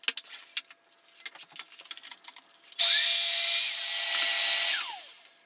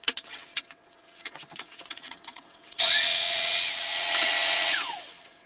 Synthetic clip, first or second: second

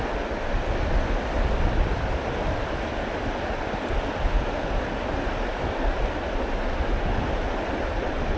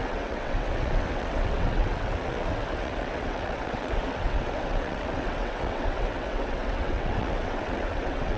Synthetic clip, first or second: second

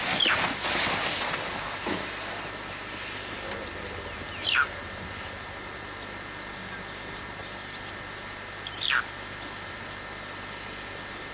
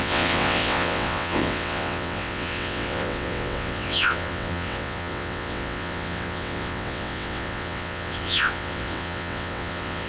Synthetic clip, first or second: second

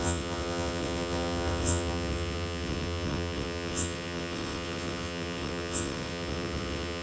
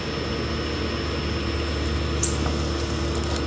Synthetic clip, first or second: first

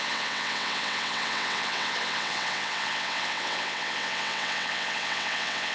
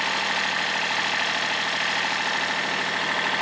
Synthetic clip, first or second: first